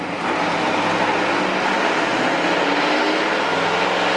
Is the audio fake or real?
real